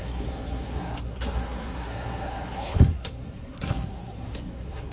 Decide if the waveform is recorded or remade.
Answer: remade